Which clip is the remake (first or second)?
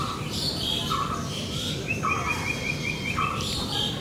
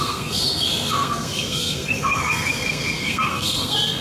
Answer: second